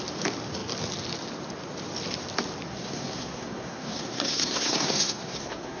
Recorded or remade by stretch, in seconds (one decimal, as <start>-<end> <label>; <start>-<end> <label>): 0.0-2.7 recorded; 2.7-5.8 remade